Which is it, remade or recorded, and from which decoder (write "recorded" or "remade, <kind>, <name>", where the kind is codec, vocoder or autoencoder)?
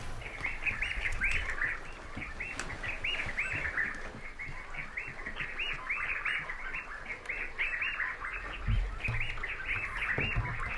recorded